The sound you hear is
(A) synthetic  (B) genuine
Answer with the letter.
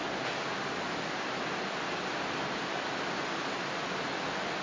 B